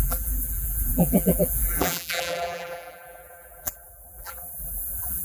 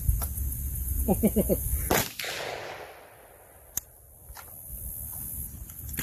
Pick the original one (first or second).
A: second